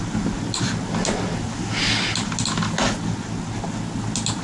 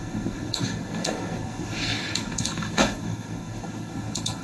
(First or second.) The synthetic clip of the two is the second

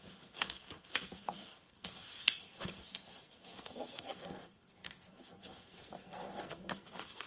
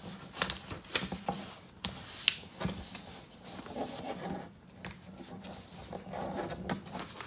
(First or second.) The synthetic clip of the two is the first